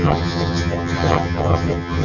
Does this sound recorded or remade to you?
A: remade